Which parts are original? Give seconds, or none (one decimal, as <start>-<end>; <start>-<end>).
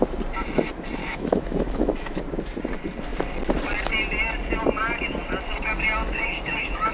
0.0-1.0; 2.2-6.0